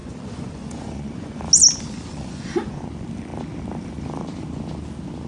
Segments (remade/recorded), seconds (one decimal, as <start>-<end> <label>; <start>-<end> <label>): 0.0-1.4 remade; 1.4-2.1 recorded; 2.1-2.8 remade; 2.8-5.3 recorded

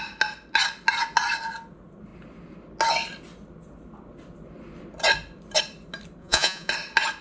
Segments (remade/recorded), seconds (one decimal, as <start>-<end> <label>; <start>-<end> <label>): 0.0-6.2 recorded; 6.2-6.7 remade; 6.7-7.2 recorded

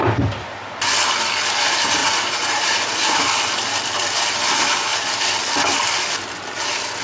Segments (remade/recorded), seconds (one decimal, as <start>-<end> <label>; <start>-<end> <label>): 0.0-2.0 recorded; 2.0-3.2 remade; 3.2-7.0 recorded

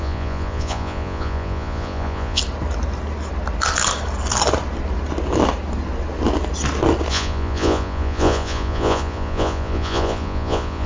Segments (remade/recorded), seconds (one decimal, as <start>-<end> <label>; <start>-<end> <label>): 0.0-2.4 remade; 2.4-7.1 recorded; 7.1-10.9 remade